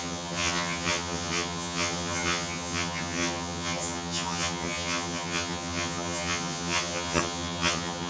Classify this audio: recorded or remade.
remade